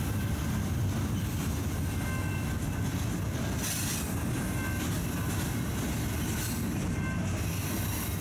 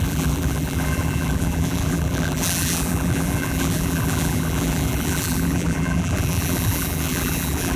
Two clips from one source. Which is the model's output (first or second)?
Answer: second